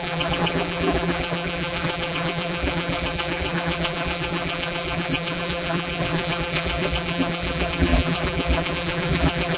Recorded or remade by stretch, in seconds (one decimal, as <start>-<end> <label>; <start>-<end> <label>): 0.0-9.6 remade